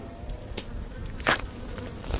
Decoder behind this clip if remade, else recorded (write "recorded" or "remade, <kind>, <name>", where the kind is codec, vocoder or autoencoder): remade, vocoder, BigVGAN v2